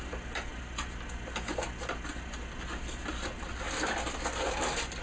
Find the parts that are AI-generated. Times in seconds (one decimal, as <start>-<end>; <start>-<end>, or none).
none